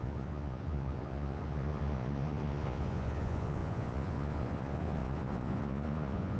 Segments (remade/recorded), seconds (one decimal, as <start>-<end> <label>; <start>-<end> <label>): 0.0-6.4 remade